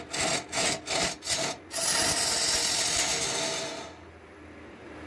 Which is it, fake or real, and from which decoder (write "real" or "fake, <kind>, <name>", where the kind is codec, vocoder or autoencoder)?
real